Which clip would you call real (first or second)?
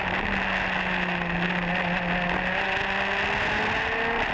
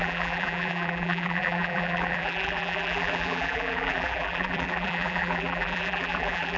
first